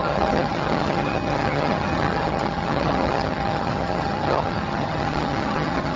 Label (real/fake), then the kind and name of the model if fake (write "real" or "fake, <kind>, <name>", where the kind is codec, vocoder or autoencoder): fake, vocoder, HiFi-GAN